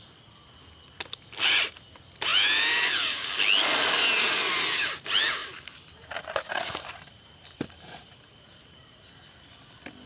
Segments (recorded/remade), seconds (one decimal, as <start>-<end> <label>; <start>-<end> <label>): 0.0-5.4 recorded; 5.4-9.1 remade; 9.1-10.1 recorded